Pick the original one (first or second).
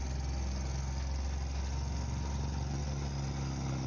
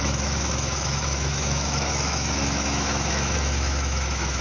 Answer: first